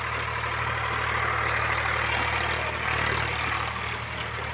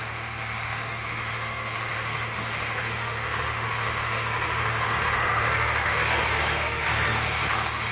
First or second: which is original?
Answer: first